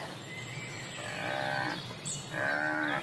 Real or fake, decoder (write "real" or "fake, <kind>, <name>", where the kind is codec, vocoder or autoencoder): real